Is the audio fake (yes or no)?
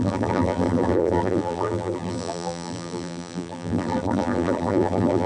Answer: yes